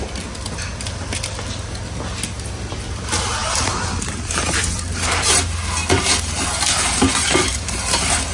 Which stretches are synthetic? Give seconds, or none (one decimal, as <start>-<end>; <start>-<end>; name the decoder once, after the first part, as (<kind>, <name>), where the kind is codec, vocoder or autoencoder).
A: 3.4-5.3 (vocoder, BigVGAN v2); 5.8-7.8